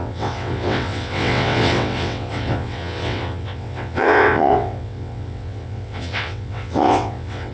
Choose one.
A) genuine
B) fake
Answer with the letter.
B